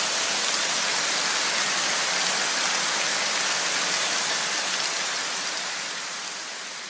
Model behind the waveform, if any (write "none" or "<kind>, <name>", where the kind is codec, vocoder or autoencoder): none